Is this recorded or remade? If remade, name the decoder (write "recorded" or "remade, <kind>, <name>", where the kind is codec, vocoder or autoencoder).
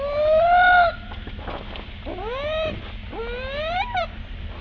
recorded